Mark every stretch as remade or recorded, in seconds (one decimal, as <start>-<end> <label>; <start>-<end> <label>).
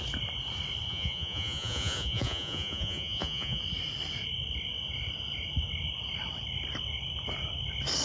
0.0-0.9 recorded; 0.9-3.6 remade; 3.6-8.0 recorded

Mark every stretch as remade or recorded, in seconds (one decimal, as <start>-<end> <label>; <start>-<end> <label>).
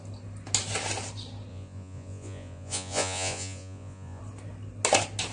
0.0-1.5 recorded; 1.5-4.2 remade; 4.2-5.3 recorded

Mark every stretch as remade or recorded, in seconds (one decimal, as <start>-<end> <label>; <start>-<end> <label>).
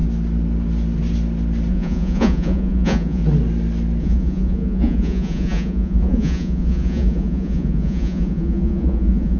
0.0-1.7 recorded; 1.7-3.2 remade; 3.2-4.0 recorded; 4.0-9.4 remade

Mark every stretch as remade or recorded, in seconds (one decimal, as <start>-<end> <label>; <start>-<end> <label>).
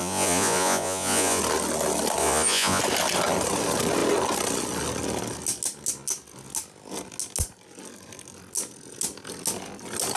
0.0-1.4 remade; 1.4-2.2 recorded; 2.2-2.8 remade; 2.8-10.2 recorded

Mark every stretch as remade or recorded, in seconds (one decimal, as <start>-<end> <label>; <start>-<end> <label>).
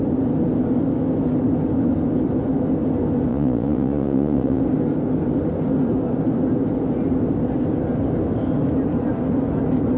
0.0-3.3 recorded; 3.3-4.6 remade; 4.6-10.0 recorded